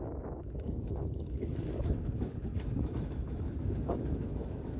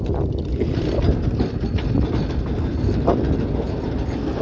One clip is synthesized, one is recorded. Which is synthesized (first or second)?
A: first